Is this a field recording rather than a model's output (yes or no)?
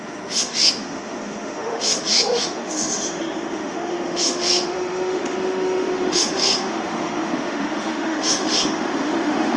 no